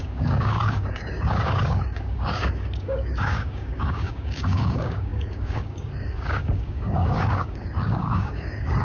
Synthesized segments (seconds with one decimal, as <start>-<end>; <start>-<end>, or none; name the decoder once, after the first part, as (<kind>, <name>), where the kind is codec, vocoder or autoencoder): 0.0-8.8 (codec, DAC)